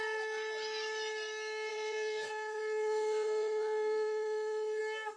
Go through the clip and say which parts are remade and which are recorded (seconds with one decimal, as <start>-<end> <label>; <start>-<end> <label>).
0.0-1.7 recorded; 1.7-4.8 remade; 4.8-5.2 recorded